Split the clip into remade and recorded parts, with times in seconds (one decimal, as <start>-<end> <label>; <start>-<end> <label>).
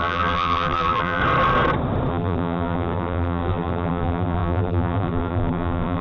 0.0-1.2 remade; 1.2-2.1 recorded; 2.1-6.0 remade